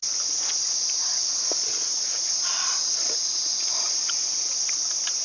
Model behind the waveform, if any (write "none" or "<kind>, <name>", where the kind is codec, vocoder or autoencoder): none